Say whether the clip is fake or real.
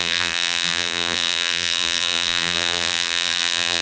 fake